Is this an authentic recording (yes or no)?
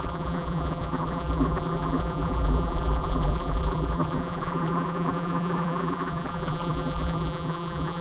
no